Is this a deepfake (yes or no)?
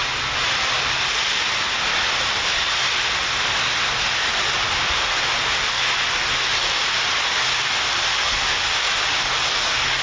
no